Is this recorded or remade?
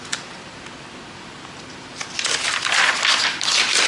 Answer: recorded